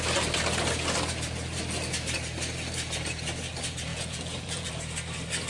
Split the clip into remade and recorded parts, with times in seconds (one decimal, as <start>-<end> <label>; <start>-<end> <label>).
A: 0.0-3.9 recorded; 3.9-4.7 remade; 4.7-5.5 recorded